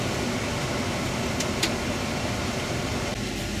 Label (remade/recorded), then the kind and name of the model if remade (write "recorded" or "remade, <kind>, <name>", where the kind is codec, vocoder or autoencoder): recorded